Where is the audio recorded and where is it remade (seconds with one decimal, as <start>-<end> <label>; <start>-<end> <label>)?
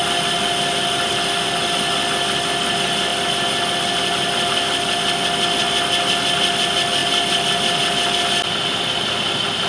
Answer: 0.0-9.7 recorded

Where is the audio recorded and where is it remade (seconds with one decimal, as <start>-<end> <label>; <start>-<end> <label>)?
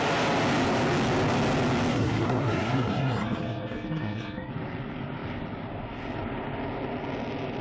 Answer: 0.0-1.9 recorded; 1.9-4.5 remade; 4.5-7.6 recorded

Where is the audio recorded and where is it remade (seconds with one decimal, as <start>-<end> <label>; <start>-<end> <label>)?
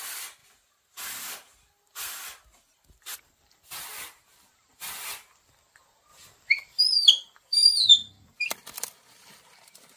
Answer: 0.0-0.4 remade; 0.4-3.3 recorded; 3.3-6.1 remade; 6.1-6.8 recorded; 6.8-7.9 remade; 7.9-8.4 recorded; 8.4-10.0 remade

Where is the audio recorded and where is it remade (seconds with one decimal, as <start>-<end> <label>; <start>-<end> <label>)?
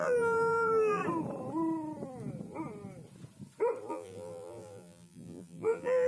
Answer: 0.0-1.0 remade; 1.0-3.9 recorded; 3.9-6.1 remade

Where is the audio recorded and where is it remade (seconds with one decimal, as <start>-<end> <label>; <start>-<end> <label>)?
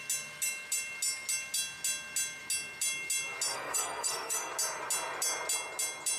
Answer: 0.0-3.5 recorded; 3.5-4.5 remade; 4.5-6.2 recorded